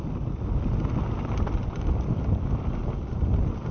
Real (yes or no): yes